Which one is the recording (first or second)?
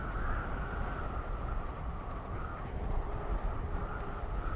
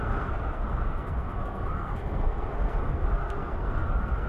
first